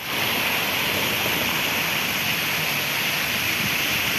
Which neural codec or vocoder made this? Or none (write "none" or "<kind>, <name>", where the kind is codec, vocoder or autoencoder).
none